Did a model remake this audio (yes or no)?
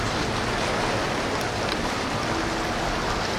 no